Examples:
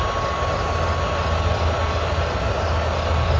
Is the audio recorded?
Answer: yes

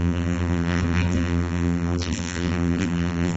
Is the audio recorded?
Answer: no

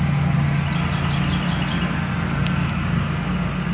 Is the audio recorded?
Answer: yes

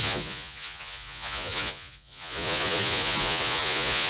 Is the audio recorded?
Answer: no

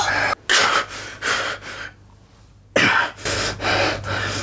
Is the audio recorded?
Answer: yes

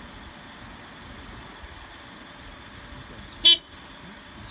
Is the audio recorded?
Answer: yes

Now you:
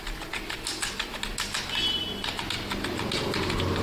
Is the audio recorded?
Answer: yes